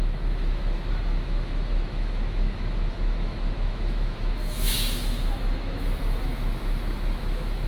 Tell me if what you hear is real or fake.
fake